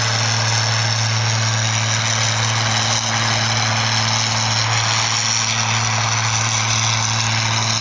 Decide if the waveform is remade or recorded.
recorded